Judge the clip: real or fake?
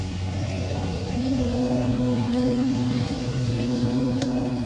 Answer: fake